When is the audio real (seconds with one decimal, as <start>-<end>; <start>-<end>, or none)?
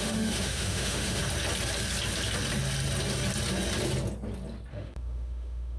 1.2-4.7